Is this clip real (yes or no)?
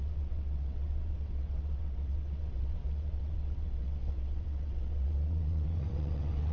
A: no